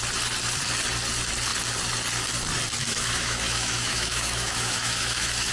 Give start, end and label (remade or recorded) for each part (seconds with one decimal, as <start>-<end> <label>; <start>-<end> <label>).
0.0-2.8 recorded; 2.8-5.5 remade